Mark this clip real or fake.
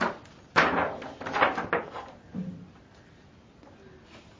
real